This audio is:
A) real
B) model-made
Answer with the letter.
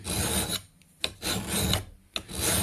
A